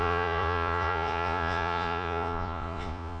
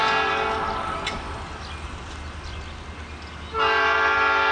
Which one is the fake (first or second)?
first